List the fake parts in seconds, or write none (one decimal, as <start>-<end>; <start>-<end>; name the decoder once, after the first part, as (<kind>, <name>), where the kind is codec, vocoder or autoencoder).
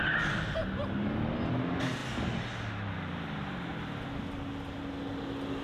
none